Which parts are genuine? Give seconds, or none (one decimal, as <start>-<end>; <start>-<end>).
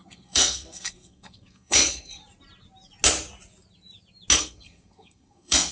2.2-4.4